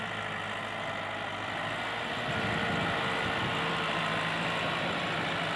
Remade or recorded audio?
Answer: recorded